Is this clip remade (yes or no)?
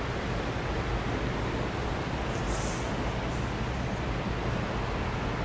no